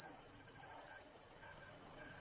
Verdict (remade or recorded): remade